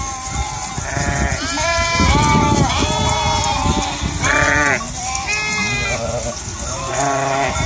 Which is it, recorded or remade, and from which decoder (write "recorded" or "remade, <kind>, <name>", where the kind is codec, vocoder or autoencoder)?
recorded